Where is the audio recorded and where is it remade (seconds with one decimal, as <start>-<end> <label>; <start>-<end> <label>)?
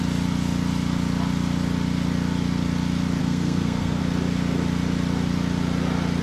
0.0-3.2 recorded; 3.2-4.0 remade; 4.0-6.2 recorded